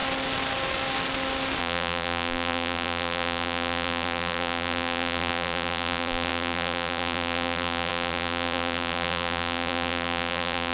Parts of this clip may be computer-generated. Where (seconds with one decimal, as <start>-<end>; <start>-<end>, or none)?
1.6-10.7